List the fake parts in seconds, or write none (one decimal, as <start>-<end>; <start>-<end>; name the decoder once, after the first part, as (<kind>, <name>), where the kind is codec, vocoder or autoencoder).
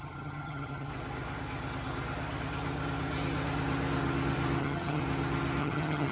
0.0-0.9 (vocoder, HiFi-GAN); 4.6-5.0; 5.6-6.1